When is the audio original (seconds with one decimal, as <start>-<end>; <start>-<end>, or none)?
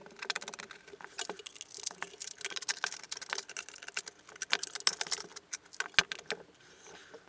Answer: 0.0-7.3